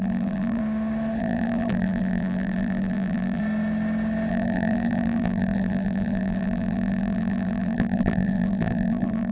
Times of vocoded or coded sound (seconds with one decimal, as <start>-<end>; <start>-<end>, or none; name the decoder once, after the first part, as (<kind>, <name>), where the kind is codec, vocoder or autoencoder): 0.0-0.6 (vocoder, BigVGAN v2); 1.2-3.4; 4.3-9.3